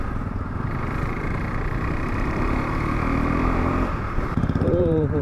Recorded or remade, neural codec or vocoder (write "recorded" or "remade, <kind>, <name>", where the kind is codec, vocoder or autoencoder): remade, vocoder, BigVGAN v2